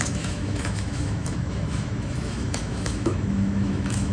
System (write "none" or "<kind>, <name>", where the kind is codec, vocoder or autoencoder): autoencoder, DAC-VAE